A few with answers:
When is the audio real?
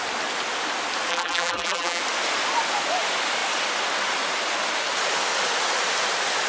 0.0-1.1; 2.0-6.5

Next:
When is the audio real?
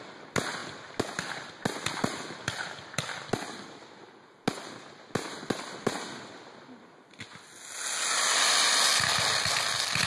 0.0-10.1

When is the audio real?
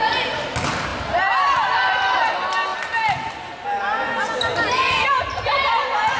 0.0-6.2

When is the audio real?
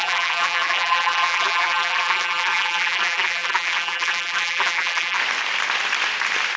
5.2-6.6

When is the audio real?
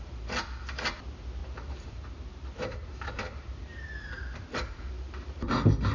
0.0-1.4; 4.9-5.9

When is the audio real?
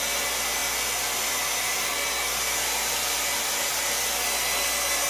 0.0-5.1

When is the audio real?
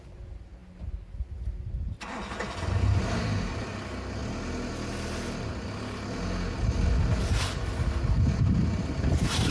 0.0-9.5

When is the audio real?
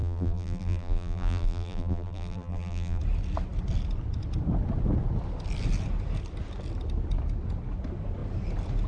3.0-8.9